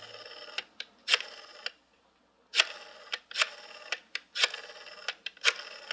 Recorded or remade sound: recorded